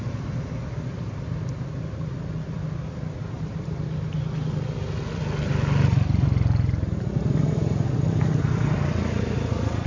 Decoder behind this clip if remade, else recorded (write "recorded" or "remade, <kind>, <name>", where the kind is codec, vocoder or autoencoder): recorded